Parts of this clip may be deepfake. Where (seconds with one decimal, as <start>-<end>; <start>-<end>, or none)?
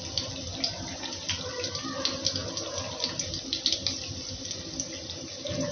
none